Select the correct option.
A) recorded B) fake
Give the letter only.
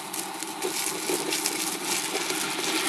A